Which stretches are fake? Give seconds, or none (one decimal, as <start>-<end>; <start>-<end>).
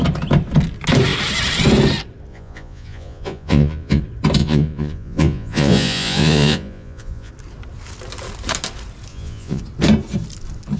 2.3-4.0; 4.4-7.3; 9.1-9.6